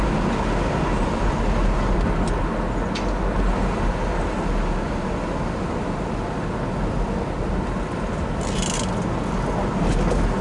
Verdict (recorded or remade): recorded